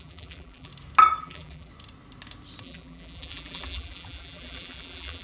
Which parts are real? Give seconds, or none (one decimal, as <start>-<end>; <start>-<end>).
0.7-1.2; 1.7-2.6